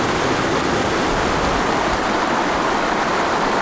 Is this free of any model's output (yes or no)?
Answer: yes